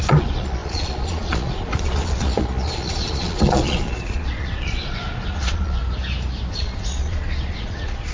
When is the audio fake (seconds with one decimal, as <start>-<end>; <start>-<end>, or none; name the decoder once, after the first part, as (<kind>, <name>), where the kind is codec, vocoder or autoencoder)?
0.0-5.8 (vocoder, Vocos); 6.5-8.1